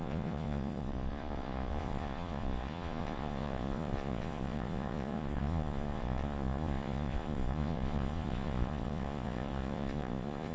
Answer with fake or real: fake